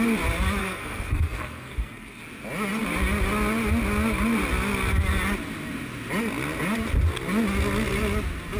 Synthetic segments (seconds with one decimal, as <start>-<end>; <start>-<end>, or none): 0.6-2.2